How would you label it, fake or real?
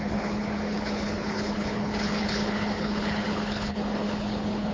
fake